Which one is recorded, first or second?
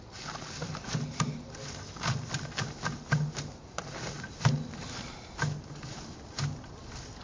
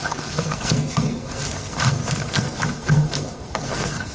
first